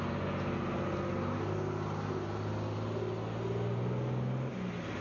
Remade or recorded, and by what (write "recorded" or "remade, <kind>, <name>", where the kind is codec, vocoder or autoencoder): recorded